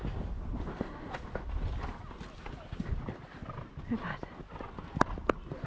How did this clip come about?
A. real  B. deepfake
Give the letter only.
A